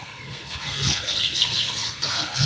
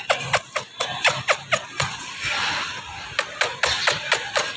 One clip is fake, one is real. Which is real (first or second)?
second